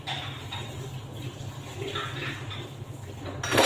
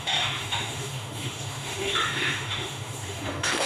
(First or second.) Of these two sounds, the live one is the first